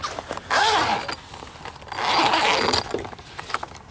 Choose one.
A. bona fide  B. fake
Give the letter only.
A